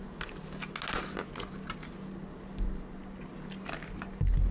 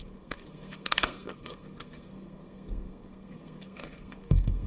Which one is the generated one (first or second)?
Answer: second